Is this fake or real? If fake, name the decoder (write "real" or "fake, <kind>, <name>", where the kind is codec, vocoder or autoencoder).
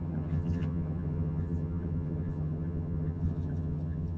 fake, vocoder, HiFi-GAN